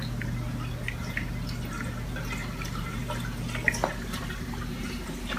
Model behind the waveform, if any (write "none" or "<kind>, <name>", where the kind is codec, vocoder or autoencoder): none